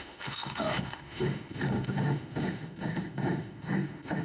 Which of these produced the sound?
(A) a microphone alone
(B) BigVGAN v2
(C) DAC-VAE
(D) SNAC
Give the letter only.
C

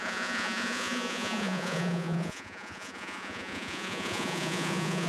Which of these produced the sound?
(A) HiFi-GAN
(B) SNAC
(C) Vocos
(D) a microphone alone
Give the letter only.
C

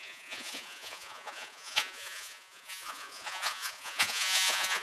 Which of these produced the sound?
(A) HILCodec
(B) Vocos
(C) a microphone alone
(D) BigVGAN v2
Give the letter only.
B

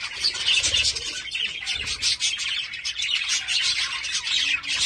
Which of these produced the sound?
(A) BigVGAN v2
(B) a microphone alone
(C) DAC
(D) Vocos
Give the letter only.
B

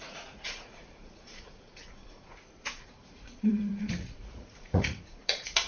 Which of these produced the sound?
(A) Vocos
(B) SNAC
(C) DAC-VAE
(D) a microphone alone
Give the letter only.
A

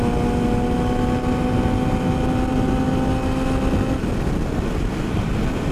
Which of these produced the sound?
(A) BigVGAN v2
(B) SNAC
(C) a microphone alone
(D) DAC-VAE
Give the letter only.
C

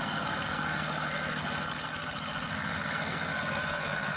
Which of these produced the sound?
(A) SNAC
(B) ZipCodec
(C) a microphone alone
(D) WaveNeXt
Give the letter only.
A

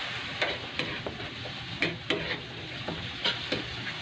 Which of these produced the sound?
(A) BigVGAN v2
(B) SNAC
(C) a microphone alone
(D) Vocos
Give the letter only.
C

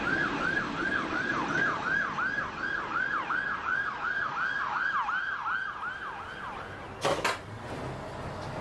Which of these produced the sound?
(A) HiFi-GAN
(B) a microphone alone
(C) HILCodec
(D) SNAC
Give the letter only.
B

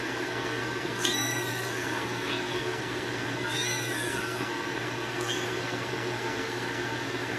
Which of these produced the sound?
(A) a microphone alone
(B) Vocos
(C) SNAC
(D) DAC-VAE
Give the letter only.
C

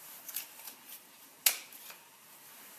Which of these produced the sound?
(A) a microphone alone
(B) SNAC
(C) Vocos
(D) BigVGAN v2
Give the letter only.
D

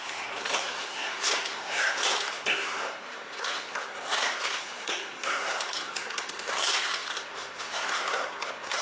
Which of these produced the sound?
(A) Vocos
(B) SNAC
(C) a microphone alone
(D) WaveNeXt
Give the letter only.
B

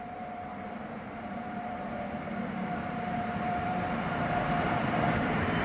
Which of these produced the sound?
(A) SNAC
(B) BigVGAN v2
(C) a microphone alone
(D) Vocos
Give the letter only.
B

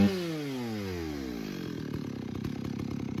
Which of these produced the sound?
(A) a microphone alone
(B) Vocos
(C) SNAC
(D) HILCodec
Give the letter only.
A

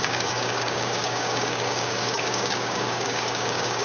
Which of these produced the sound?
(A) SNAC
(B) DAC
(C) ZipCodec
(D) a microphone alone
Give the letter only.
B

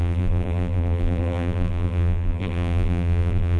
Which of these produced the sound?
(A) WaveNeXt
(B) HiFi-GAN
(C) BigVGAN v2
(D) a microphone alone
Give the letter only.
C